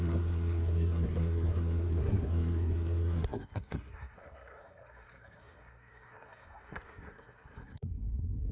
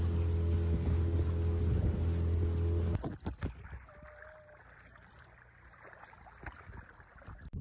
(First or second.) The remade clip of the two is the first